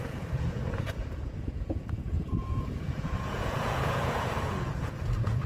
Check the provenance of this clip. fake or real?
fake